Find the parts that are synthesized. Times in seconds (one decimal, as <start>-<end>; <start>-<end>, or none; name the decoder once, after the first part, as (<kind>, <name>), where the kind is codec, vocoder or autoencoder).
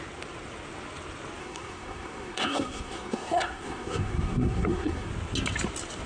1.4-5.1 (codec, SNAC)